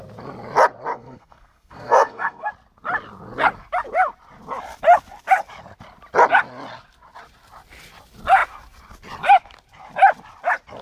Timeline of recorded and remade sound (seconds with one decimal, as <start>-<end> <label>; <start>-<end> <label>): 0.0-0.9 recorded; 0.9-2.5 remade; 2.5-10.8 recorded